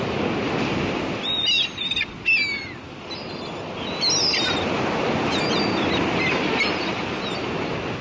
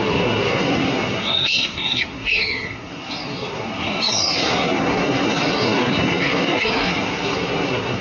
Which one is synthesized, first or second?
second